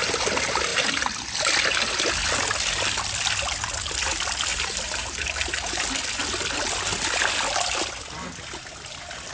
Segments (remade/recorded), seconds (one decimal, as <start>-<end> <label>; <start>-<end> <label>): 0.0-4.5 recorded; 4.5-5.5 remade; 5.5-9.3 recorded